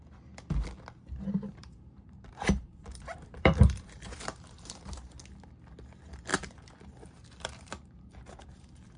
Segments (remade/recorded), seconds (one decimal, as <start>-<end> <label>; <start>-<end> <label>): 0.0-1.6 recorded; 1.6-5.2 remade; 5.2-6.3 recorded; 6.3-9.0 remade